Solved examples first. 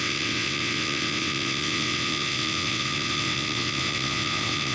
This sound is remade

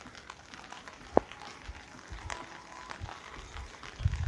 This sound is recorded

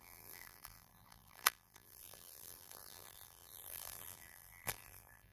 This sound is remade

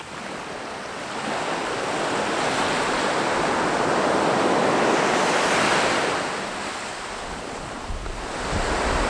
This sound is recorded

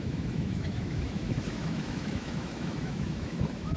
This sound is remade